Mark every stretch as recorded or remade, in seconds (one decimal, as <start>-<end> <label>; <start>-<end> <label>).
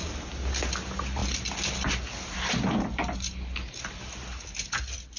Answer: 0.0-5.2 recorded